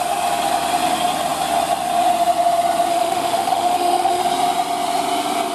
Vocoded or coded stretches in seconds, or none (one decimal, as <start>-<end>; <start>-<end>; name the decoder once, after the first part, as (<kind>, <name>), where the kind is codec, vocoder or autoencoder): 2.9-4.2 (autoencoder, DAC-VAE)